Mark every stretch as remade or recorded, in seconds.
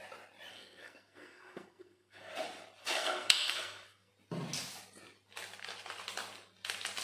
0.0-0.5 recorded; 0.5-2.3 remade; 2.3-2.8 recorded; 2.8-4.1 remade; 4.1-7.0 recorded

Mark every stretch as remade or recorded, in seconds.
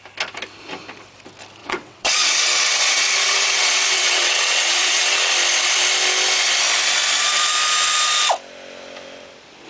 0.0-1.6 recorded; 1.6-5.3 remade; 5.3-9.7 recorded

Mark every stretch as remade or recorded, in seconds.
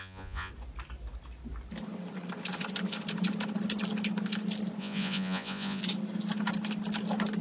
0.0-0.5 remade; 0.5-4.8 recorded; 4.8-5.8 remade; 5.8-7.4 recorded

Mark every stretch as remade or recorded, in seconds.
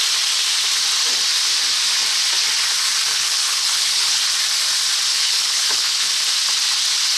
0.0-3.1 recorded; 3.1-4.2 remade; 4.2-5.1 recorded; 5.1-6.1 remade; 6.1-7.2 recorded